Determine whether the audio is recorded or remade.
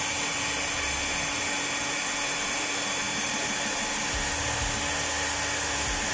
recorded